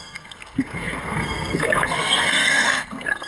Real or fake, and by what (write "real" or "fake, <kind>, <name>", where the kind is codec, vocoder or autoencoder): fake, codec, SNAC